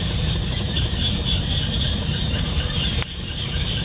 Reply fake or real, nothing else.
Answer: fake